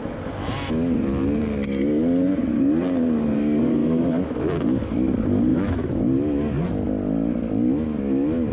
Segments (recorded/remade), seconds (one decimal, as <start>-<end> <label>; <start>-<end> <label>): 0.0-3.8 recorded; 3.8-4.4 remade; 4.4-5.5 recorded; 5.5-6.0 remade; 6.0-8.5 recorded